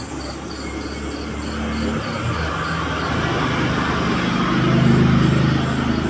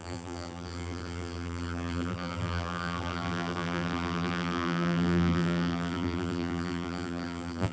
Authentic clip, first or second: first